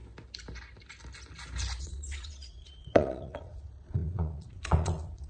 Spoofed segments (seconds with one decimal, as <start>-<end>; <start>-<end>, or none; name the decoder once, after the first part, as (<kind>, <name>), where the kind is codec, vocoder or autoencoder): 1.8-5.3 (vocoder, Vocos)

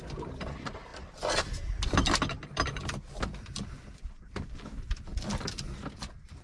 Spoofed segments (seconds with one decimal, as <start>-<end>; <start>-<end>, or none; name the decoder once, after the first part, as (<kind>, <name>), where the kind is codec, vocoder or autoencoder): none

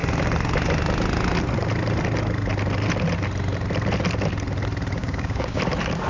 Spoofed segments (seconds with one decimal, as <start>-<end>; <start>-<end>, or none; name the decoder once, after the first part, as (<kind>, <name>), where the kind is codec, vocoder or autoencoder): 5.0-5.6 (codec, DAC)

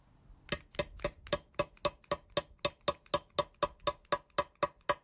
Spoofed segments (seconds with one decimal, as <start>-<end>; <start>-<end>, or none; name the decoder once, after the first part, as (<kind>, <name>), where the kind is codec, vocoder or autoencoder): none

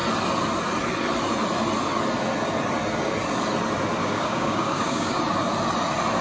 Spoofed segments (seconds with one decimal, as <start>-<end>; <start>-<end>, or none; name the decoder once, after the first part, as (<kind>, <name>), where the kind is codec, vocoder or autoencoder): 4.0-5.2 (codec, DAC)

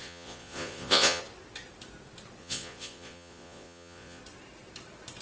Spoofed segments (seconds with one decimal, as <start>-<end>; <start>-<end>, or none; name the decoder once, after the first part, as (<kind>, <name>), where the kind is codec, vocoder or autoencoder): 0.0-1.2 (vocoder, Vocos); 2.4-4.2